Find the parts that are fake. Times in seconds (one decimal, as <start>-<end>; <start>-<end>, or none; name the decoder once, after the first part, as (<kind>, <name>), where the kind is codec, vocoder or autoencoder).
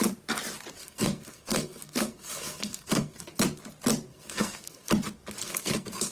0.8-3.4 (codec, SNAC); 4.1-4.9; 5.4-6.1